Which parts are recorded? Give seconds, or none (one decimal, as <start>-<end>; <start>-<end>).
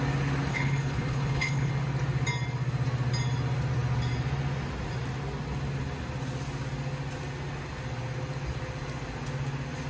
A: 0.0-0.5; 1.7-9.9